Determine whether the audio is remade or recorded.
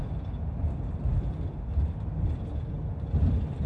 recorded